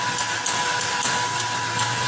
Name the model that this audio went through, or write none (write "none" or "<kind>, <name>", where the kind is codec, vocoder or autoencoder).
none